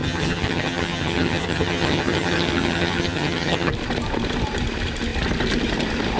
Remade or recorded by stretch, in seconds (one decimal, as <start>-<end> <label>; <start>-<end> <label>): 0.0-3.7 remade; 3.7-6.2 recorded